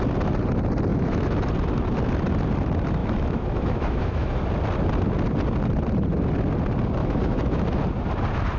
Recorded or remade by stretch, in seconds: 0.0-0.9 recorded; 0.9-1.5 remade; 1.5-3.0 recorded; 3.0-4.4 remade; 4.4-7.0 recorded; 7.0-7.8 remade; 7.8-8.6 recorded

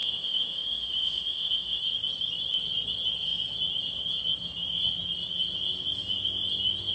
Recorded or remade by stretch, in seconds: 0.0-1.8 remade; 1.8-6.9 recorded

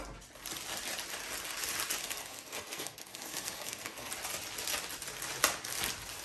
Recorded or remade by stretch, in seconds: 0.0-2.0 recorded; 2.0-4.1 remade; 4.1-6.2 recorded

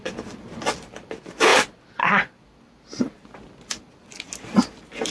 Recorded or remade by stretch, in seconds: 0.0-5.1 recorded

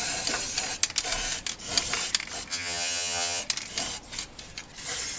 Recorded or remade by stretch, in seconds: 0.0-2.5 recorded; 2.5-3.4 remade; 3.4-5.2 recorded

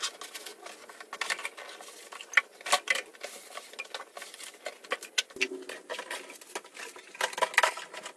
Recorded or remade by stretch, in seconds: 0.0-8.2 recorded